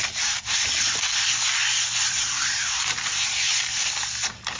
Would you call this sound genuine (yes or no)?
yes